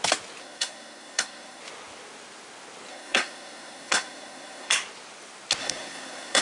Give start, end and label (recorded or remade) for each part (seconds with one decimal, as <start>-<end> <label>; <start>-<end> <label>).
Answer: 0.0-0.4 recorded; 0.4-1.6 remade; 1.6-2.9 recorded; 2.9-4.7 remade; 4.7-5.6 recorded; 5.6-6.4 remade